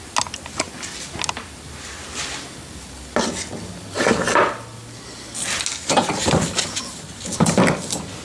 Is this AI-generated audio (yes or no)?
no